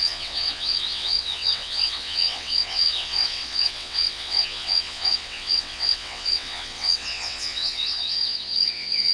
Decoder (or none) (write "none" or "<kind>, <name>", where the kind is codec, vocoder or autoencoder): vocoder, WaveNeXt